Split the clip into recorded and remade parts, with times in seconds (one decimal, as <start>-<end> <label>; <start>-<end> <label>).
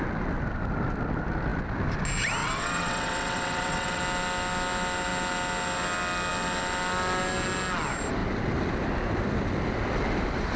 0.0-2.4 recorded; 2.4-4.0 remade; 4.0-10.6 recorded